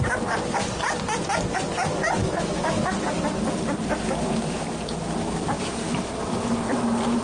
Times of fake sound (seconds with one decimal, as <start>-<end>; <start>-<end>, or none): 2.2-2.9